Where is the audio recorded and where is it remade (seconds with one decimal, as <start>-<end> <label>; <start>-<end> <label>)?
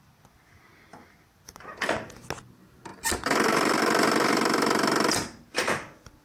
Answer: 0.0-6.2 recorded